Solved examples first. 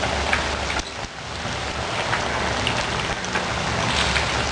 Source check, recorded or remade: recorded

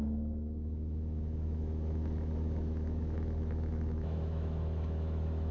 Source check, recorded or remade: remade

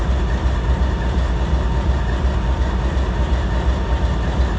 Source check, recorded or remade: recorded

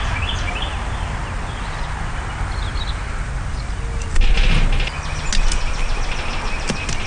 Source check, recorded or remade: recorded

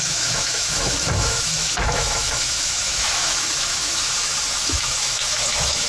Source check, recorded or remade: remade